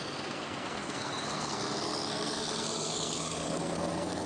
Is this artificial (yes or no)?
yes